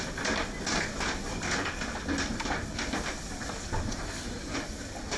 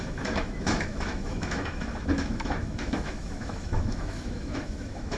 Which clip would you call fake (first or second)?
second